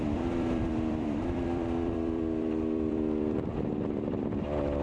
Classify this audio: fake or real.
fake